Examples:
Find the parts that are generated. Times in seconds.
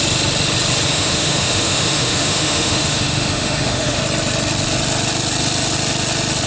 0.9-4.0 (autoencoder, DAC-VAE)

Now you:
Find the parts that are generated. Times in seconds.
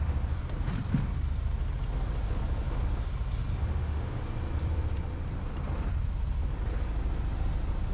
3.6-4.2 (autoencoder, DAC-VAE)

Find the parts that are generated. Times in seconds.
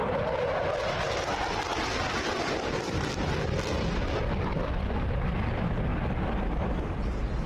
1.7-3.1 (vocoder, BigVGAN v2)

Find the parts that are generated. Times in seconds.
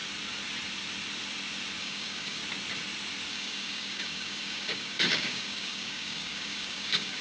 1.8-2.4 (codec, DAC); 3.3-7.2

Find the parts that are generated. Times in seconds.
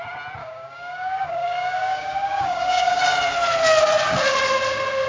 0.4-3.0 (codec, DAC)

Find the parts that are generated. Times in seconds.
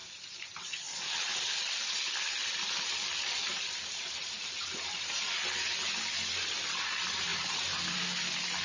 0.0-0.6 (vocoder, BigVGAN v2); 3.4-5.1; 7.3-8.0